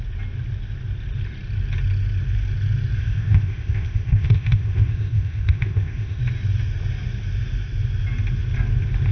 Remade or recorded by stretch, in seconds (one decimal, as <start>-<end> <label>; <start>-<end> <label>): 0.0-3.0 recorded; 3.0-6.2 remade; 6.2-9.1 recorded